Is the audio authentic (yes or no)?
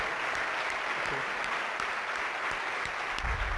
yes